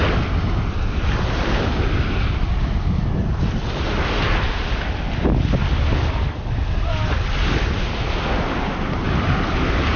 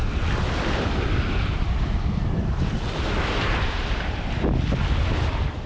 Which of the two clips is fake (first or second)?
second